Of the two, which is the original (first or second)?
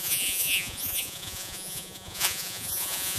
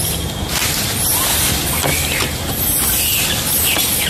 second